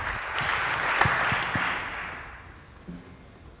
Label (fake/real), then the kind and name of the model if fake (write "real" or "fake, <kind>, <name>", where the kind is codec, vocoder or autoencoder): real